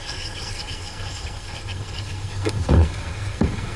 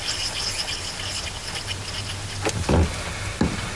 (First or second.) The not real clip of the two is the first